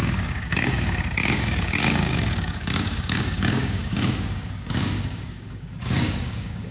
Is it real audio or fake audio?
fake